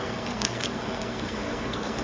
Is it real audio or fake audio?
fake